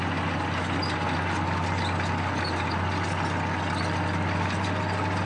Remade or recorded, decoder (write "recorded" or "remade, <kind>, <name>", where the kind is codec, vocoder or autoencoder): recorded